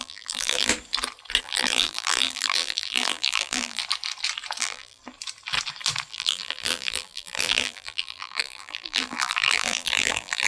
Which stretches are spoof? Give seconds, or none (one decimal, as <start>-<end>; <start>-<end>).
0.0-0.7; 1.4-3.8; 4.6-5.0; 6.1-10.5